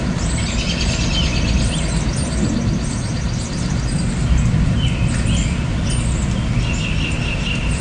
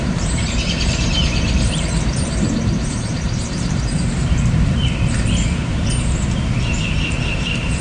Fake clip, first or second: second